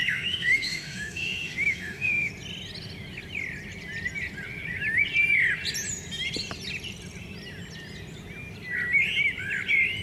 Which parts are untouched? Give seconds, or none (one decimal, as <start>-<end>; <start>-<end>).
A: 2.3-10.0